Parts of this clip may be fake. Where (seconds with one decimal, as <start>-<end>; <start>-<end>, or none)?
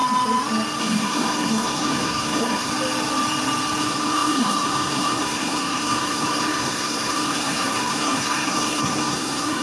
0.8-2.7; 3.8-9.6